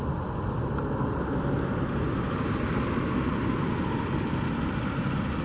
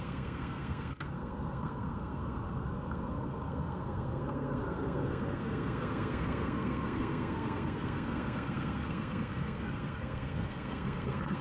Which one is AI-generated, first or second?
second